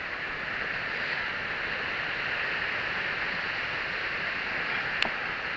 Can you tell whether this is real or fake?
real